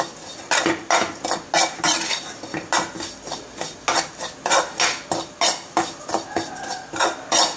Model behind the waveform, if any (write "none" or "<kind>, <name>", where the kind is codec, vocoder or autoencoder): none